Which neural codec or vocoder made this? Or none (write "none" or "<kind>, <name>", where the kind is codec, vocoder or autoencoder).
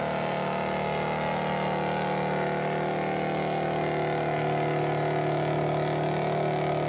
none